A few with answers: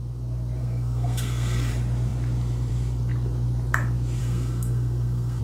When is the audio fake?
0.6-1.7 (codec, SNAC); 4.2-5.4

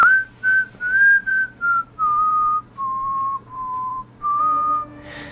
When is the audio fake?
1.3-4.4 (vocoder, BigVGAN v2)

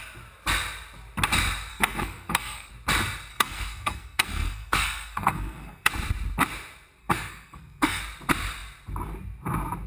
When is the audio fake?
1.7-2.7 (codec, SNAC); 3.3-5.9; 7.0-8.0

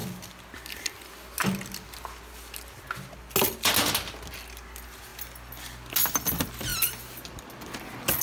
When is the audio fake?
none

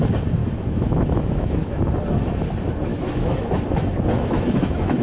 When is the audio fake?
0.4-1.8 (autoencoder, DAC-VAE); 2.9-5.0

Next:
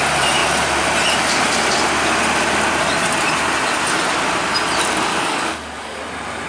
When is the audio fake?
5.1-6.0 (codec, DAC)

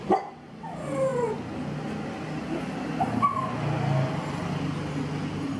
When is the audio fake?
none